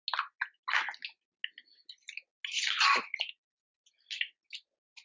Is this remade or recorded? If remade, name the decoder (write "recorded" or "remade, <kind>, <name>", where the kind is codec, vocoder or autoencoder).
recorded